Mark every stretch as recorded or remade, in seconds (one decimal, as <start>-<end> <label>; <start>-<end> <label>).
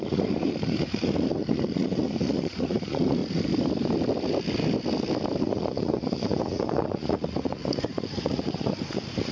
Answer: 0.0-3.2 remade; 3.2-5.4 recorded; 5.4-9.3 remade